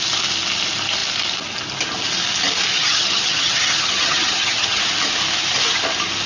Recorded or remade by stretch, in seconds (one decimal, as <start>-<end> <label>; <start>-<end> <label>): 0.0-2.7 recorded; 2.7-4.8 remade; 4.8-6.3 recorded